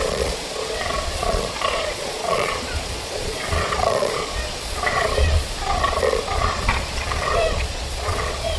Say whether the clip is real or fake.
fake